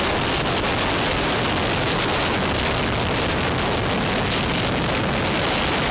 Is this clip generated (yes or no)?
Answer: no